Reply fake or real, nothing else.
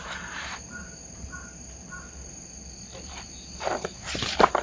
fake